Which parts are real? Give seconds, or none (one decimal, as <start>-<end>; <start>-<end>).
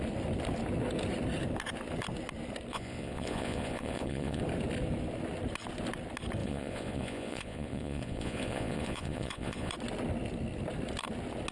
0.0-2.7; 4.4-6.4; 9.7-11.5